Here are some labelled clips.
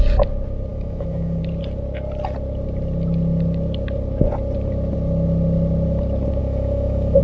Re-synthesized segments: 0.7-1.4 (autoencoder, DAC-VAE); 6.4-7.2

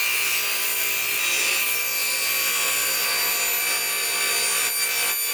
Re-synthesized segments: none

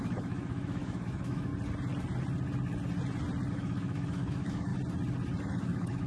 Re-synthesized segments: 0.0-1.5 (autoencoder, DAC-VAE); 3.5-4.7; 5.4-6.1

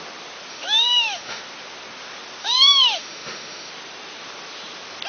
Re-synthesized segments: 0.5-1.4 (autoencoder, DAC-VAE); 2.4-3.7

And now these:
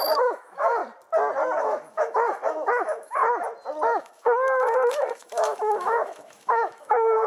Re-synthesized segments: 0.0-0.8 (autoencoder, DAC-VAE); 1.6-3.2; 4.0-7.3